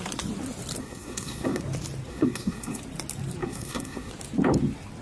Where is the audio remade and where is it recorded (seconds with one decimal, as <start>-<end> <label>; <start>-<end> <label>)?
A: 0.0-0.8 recorded; 0.8-1.6 remade; 1.6-2.1 recorded; 2.1-2.8 remade; 2.8-3.4 recorded; 3.4-4.1 remade; 4.1-5.0 recorded